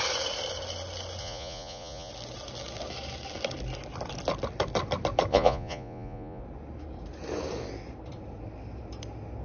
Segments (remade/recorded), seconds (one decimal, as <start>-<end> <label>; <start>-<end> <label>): 0.0-1.2 recorded; 1.2-2.1 remade; 2.1-5.3 recorded; 5.3-6.4 remade; 6.4-9.4 recorded